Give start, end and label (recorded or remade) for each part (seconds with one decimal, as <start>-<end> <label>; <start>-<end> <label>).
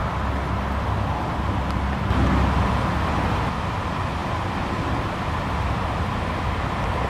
0.0-7.1 recorded